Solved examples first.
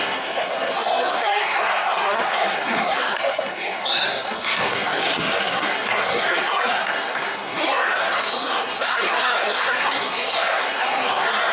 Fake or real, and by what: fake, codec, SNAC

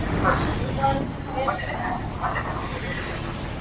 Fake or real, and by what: real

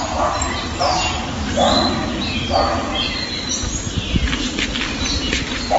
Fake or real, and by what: real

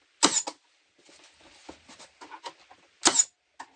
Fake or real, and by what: real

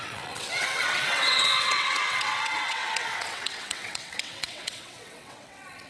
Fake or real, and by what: fake, vocoder, WaveNeXt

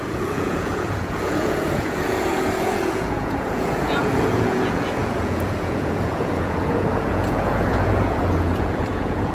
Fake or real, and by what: fake, vocoder, Vocos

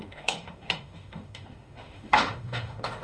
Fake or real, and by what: fake, autoencoder, DAC-VAE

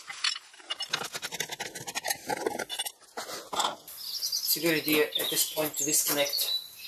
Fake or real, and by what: real